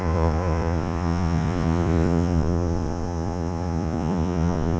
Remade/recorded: remade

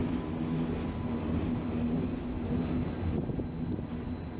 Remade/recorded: recorded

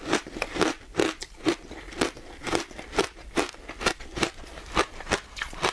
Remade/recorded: recorded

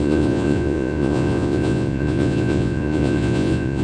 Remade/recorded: remade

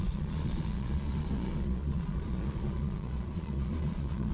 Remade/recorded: remade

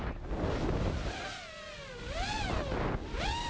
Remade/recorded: recorded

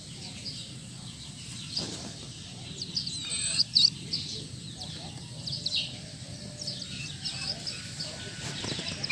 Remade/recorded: recorded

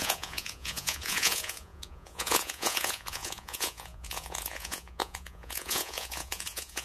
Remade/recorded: remade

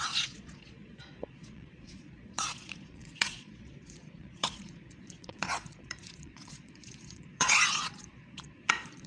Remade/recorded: remade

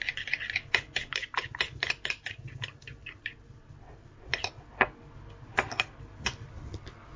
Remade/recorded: recorded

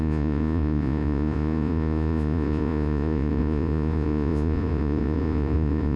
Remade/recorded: remade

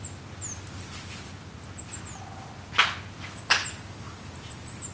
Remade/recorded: recorded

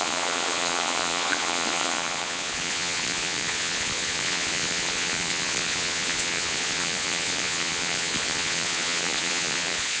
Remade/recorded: remade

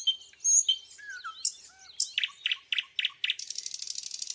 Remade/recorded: recorded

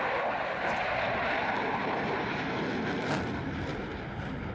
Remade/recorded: recorded